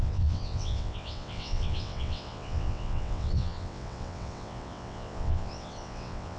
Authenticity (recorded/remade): remade